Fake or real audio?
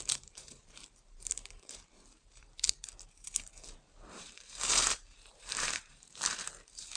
fake